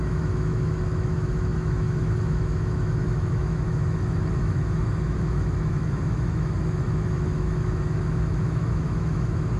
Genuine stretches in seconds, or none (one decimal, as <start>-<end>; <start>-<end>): none